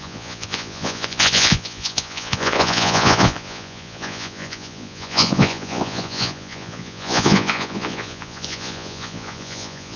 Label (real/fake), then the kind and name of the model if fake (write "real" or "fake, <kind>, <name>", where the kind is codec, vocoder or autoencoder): fake, vocoder, Vocos